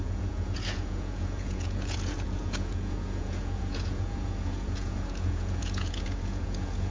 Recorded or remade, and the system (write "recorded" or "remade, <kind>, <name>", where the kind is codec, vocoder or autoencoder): remade, vocoder, Vocos